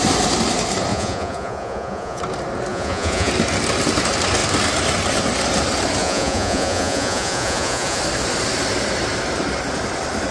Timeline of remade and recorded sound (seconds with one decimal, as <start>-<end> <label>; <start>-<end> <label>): 0.0-0.9 recorded; 0.9-2.2 remade; 2.2-2.7 recorded; 2.7-3.3 remade; 3.3-6.0 recorded; 6.0-8.0 remade; 8.0-10.3 recorded